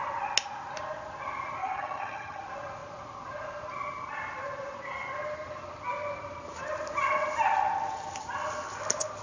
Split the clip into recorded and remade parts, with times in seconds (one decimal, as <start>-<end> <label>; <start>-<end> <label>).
0.0-1.6 recorded; 1.6-2.4 remade; 2.4-9.2 recorded